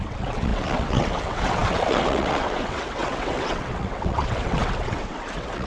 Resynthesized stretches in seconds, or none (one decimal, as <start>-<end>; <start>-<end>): 0.0-5.7